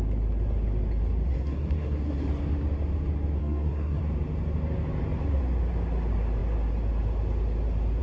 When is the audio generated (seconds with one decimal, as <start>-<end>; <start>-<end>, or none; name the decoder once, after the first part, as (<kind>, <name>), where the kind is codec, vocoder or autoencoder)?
1.3-2.3 (codec, SNAC); 3.4-4.0